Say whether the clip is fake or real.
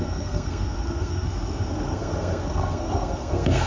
fake